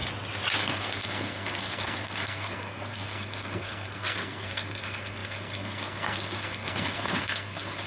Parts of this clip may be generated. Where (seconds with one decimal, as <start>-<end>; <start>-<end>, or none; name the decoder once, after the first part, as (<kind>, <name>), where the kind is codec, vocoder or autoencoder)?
0.6-7.9 (codec, SNAC)